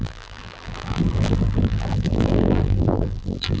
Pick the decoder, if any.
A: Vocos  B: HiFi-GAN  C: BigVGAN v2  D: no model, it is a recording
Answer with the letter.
C